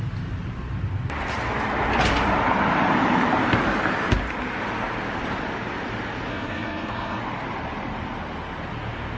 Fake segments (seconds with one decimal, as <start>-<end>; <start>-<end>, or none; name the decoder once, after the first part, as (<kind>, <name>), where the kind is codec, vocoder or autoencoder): 6.3-7.2 (codec, SNAC)